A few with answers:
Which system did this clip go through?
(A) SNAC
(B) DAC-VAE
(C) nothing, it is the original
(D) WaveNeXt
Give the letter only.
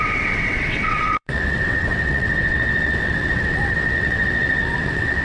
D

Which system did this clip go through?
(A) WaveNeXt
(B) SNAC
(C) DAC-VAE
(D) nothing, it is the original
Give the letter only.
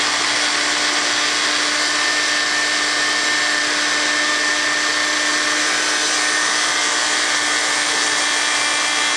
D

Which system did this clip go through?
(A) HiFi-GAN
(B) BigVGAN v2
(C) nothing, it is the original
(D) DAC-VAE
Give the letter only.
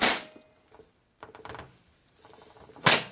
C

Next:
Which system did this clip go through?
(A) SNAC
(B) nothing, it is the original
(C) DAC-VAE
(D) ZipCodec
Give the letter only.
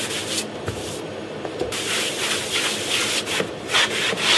B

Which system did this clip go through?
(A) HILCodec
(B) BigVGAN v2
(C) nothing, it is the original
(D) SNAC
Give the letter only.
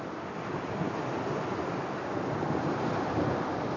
C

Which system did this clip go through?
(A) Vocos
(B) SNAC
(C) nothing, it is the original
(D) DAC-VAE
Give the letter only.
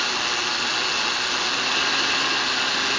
C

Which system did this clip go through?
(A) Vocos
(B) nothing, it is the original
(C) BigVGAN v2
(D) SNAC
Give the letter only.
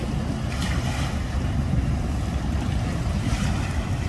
C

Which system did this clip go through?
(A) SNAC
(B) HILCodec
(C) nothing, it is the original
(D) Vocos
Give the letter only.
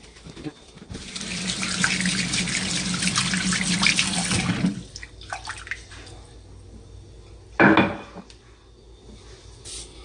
C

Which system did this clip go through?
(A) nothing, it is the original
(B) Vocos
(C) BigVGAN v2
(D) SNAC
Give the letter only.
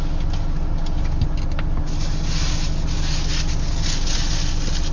A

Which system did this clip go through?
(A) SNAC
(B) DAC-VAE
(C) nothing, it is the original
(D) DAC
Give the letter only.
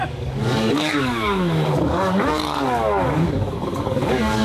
D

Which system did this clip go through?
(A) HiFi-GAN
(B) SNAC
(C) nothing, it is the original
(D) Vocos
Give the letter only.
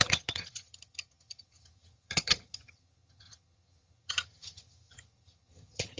A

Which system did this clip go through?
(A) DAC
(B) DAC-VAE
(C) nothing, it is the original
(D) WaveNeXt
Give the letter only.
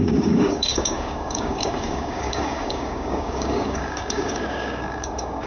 A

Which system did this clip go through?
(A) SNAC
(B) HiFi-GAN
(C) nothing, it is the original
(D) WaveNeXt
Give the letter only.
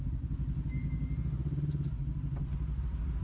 C